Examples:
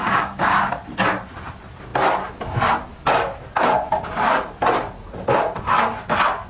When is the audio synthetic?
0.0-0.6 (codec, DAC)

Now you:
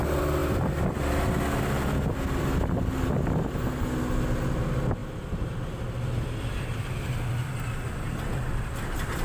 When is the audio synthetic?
none

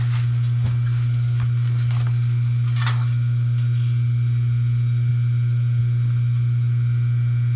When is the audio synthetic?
none

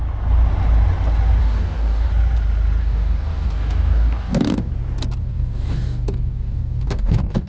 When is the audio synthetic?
1.4-2.1 (codec, DAC); 2.8-4.7; 5.2-7.5

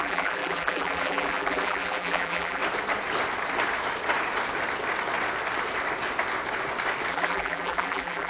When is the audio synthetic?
0.0-2.6 (vocoder, BigVGAN v2); 7.1-8.3

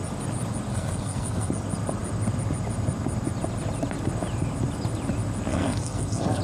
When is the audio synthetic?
0.7-1.5 (codec, SNAC); 5.5-6.4